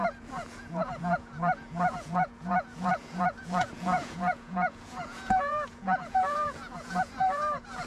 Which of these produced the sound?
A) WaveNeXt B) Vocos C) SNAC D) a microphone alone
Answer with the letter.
B